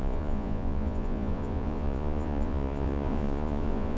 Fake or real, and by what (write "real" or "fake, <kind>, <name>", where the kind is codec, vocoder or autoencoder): fake, vocoder, Vocos